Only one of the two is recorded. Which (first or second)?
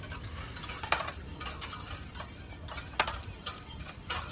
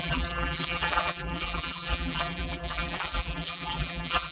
first